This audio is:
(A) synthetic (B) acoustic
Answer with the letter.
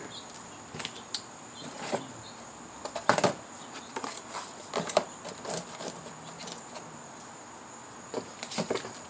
B